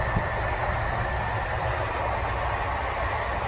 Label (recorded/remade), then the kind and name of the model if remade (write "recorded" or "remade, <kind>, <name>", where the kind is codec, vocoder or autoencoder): recorded